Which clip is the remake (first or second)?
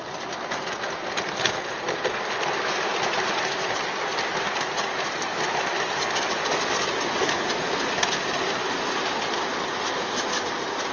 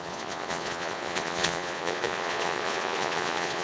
second